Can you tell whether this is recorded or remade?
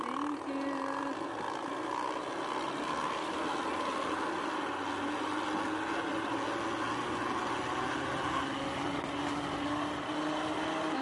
recorded